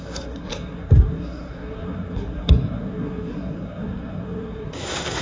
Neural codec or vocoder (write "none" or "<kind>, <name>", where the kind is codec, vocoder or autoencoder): codec, SNAC